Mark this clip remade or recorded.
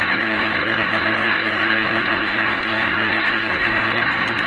remade